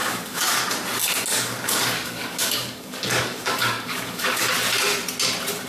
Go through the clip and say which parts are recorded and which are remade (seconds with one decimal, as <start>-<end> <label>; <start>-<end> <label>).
0.0-0.7 remade; 0.7-1.3 recorded; 1.3-4.5 remade; 4.5-5.7 recorded